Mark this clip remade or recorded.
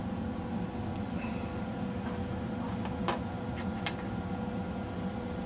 recorded